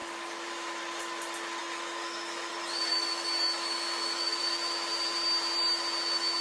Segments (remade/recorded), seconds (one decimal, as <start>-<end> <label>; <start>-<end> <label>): 0.0-1.6 recorded; 1.6-2.5 remade; 2.5-2.9 recorded; 2.9-4.4 remade; 4.4-6.4 recorded